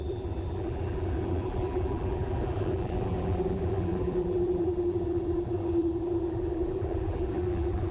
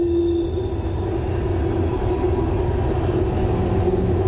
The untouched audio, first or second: second